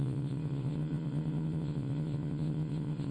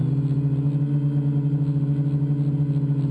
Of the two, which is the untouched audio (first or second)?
second